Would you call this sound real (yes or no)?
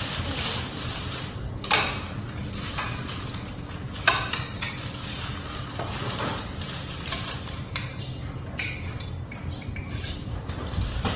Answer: no